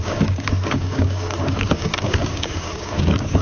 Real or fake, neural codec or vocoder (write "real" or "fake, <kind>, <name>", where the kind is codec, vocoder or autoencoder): fake, codec, DAC